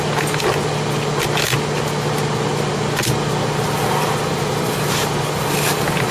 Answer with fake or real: real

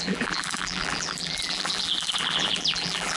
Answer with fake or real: fake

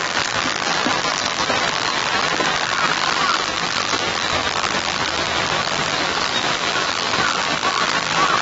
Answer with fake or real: fake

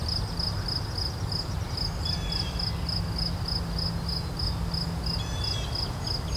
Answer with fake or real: real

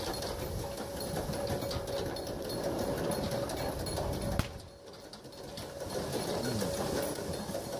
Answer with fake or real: real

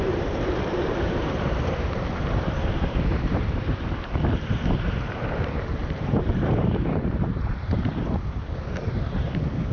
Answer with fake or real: fake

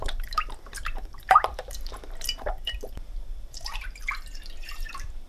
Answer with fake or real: fake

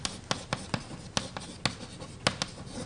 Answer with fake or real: real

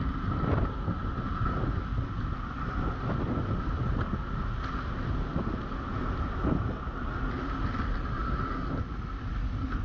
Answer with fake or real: real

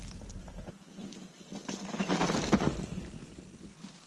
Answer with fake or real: real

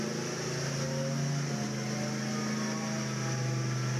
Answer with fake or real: real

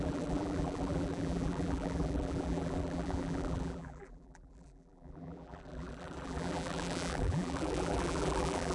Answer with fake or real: fake